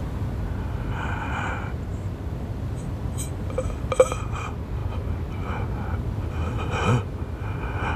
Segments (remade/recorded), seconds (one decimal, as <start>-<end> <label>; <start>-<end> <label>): 0.0-8.0 recorded